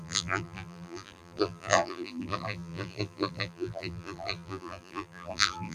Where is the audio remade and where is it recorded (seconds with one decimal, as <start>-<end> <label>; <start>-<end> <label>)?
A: 0.0-5.7 remade